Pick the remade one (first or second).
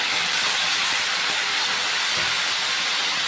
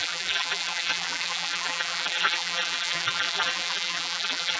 second